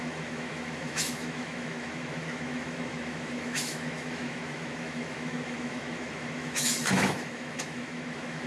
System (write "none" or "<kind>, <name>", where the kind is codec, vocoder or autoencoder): autoencoder, DAC-VAE